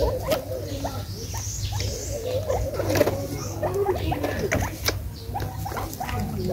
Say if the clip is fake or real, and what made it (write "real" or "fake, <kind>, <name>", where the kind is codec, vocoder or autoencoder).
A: real